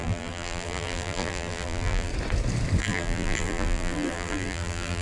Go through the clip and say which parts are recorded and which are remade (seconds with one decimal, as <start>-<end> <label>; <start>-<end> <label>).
0.0-2.1 remade; 2.1-2.8 recorded; 2.8-5.0 remade